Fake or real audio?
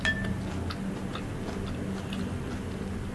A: real